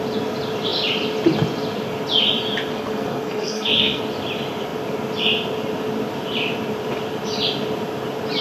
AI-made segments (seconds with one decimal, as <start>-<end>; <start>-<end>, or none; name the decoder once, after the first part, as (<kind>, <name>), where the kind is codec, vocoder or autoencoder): 2.7-4.0 (codec, SNAC)